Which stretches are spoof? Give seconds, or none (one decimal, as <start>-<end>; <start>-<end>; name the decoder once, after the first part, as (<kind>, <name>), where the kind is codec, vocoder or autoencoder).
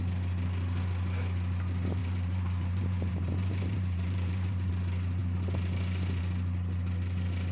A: 2.0-4.7 (vocoder, BigVGAN v2)